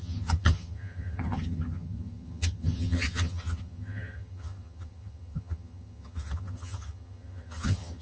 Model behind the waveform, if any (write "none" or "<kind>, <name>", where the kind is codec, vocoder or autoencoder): vocoder, HiFi-GAN